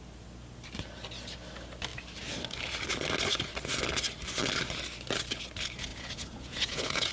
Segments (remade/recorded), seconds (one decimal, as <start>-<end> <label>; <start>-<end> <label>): 0.0-5.9 recorded; 5.9-7.1 remade